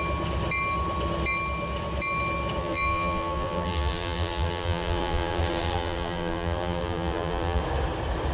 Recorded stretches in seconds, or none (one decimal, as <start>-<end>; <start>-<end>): 0.0-2.6; 7.6-8.3